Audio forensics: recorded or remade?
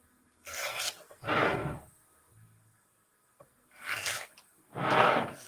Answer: remade